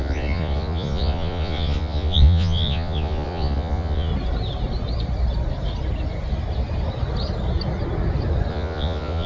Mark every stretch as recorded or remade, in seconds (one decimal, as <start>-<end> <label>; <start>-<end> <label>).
0.0-4.1 remade; 4.1-8.5 recorded; 8.5-9.3 remade